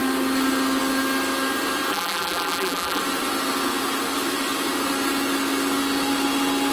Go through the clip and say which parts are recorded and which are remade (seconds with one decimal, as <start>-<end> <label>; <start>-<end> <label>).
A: 0.0-1.9 recorded; 1.9-3.0 remade; 3.0-6.7 recorded